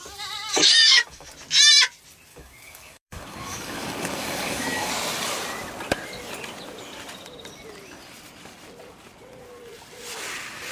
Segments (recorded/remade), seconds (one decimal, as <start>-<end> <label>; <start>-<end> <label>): 0.0-0.5 recorded; 0.5-1.3 remade; 1.3-2.3 recorded; 2.3-4.9 remade; 4.9-10.7 recorded